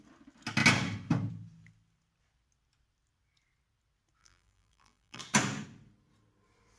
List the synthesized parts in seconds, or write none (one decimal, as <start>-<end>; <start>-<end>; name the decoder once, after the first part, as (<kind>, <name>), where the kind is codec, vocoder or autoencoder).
4.2-5.2 (vocoder, BigVGAN v2)